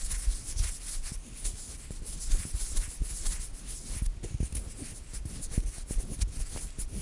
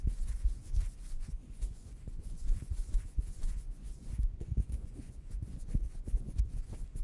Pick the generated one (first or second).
second